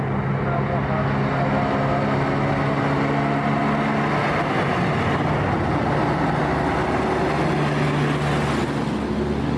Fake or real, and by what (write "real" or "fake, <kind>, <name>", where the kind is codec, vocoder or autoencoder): real